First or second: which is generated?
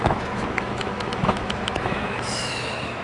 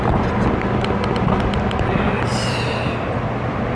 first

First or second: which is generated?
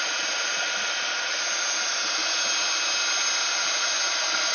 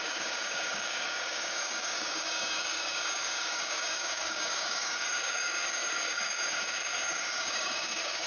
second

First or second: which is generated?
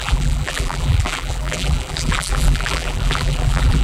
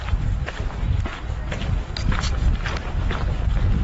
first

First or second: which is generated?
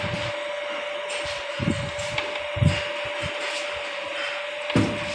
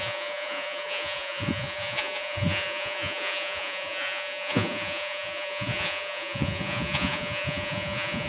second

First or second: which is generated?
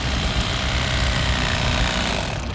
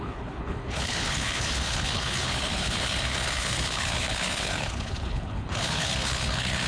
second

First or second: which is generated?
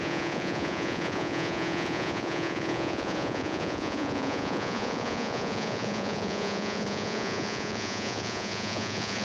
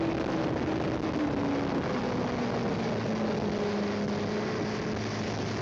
first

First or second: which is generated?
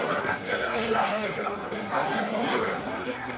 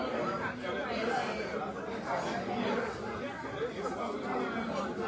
first